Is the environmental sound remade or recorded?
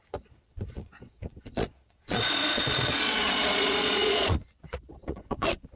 remade